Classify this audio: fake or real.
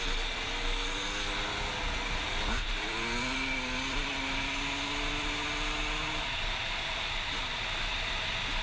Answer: real